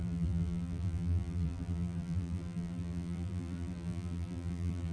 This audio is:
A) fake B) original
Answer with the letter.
A